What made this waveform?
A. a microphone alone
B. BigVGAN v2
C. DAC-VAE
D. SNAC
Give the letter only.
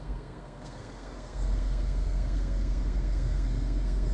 D